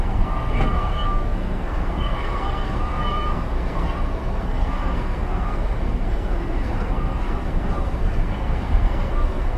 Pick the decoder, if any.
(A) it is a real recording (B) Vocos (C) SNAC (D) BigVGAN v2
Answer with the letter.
C